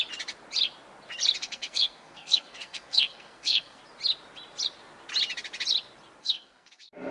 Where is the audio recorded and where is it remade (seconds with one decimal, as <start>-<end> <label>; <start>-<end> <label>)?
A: 0.0-1.4 recorded; 1.4-3.8 remade; 3.8-6.2 recorded; 6.2-7.1 remade